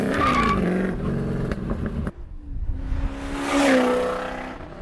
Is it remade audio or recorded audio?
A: recorded